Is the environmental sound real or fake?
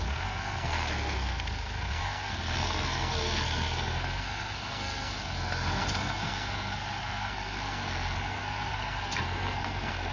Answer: fake